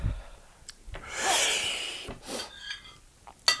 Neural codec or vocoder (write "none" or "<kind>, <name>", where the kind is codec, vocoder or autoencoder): none